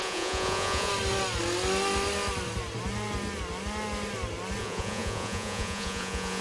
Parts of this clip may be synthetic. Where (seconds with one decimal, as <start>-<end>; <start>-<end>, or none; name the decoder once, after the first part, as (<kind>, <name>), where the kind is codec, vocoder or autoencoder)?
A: 0.0-0.9 (vocoder, Vocos); 4.6-6.4